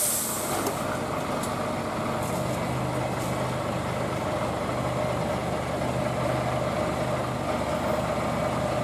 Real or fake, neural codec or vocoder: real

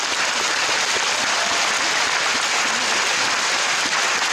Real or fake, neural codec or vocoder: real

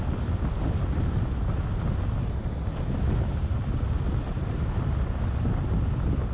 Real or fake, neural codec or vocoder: real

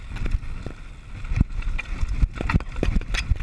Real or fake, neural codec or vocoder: real